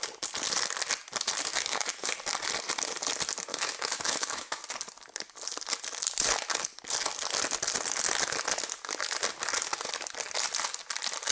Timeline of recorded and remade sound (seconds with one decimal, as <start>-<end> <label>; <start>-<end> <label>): 0.0-1.5 recorded; 1.5-2.1 remade; 2.1-3.5 recorded; 3.5-4.6 remade; 4.6-11.3 recorded